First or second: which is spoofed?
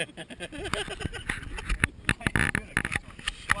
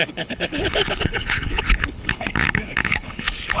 second